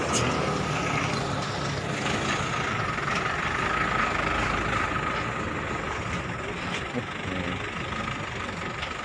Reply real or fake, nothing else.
real